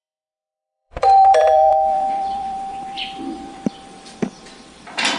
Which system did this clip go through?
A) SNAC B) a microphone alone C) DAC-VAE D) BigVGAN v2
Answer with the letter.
D